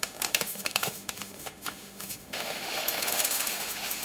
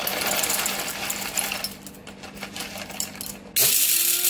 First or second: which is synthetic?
first